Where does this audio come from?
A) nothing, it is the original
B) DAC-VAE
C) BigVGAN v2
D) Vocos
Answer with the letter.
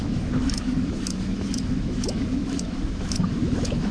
B